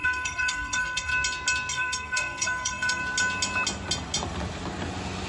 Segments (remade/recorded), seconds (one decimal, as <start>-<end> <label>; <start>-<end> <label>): 0.0-1.1 remade; 1.1-1.7 recorded; 1.7-3.0 remade; 3.0-5.3 recorded